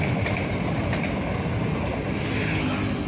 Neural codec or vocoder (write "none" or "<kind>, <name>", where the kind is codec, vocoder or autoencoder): none